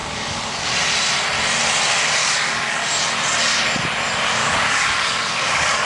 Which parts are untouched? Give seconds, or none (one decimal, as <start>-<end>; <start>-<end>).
0.7-2.2; 2.8-4.4